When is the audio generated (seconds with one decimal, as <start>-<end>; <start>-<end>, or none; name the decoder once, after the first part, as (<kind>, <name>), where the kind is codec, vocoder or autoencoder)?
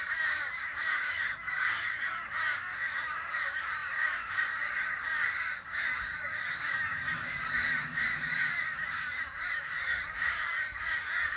0.0-11.4 (codec, DAC)